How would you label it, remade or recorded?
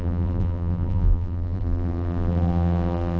remade